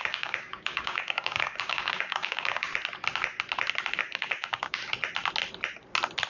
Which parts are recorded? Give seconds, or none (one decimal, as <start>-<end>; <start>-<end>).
2.7-4.0; 4.8-6.3